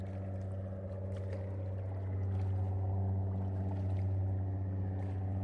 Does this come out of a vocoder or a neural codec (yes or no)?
no